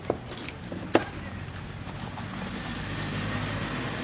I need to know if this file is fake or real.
real